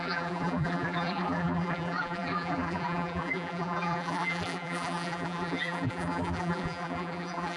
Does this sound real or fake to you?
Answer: fake